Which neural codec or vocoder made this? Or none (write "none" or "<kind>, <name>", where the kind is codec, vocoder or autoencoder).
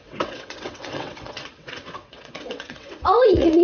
vocoder, WaveNeXt